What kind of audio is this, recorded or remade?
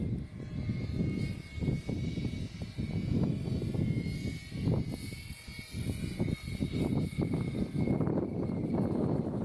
recorded